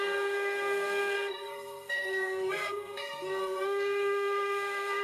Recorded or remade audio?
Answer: remade